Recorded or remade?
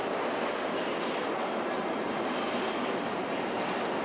recorded